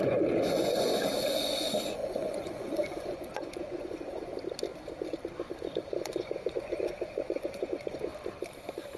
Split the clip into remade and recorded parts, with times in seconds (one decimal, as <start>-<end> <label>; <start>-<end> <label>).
0.0-4.3 remade; 4.3-5.9 recorded; 5.9-8.1 remade; 8.1-9.0 recorded